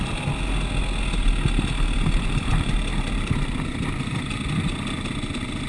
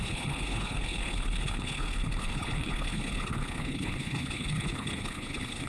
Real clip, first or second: first